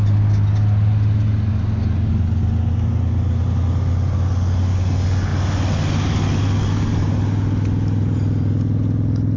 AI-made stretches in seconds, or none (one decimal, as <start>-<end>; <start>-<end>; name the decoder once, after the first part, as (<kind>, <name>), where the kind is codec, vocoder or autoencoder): none